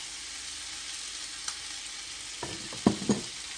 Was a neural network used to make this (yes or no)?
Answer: no